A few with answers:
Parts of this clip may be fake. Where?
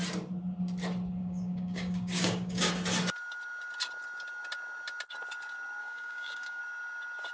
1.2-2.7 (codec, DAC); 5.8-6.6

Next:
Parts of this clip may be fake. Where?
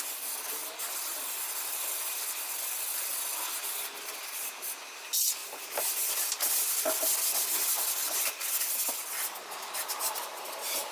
5.4-8.5 (vocoder, BigVGAN v2)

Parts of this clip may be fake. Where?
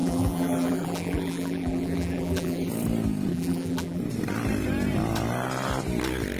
0.0-2.7 (vocoder, BigVGAN v2); 3.3-4.0